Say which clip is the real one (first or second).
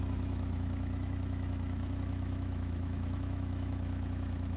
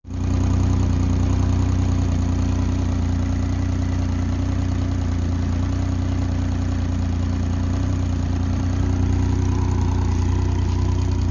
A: second